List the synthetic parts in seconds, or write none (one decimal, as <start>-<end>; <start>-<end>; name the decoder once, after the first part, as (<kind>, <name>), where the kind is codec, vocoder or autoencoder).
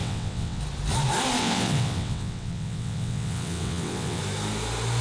0.0-0.6 (vocoder, WaveNeXt); 1.4-4.2